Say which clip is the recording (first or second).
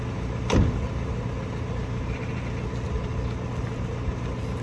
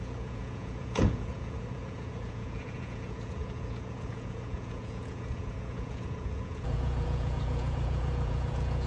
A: first